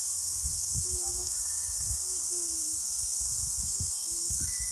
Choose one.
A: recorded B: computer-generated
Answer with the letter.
B